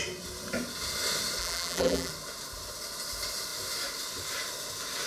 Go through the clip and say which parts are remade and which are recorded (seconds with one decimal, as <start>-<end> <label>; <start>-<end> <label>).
0.0-1.4 recorded; 1.4-2.1 remade; 2.1-5.1 recorded